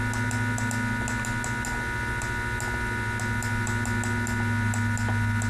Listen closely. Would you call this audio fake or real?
real